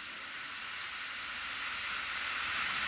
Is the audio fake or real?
real